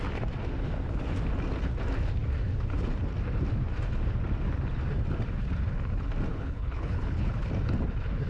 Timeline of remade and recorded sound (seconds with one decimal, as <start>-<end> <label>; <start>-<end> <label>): 0.0-6.3 recorded; 6.3-7.5 remade; 7.5-8.3 recorded